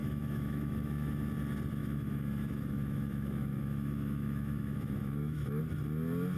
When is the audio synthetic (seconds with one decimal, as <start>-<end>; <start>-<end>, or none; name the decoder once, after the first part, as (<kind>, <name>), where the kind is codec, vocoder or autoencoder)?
0.0-1.1 (autoencoder, DAC-VAE); 1.8-5.6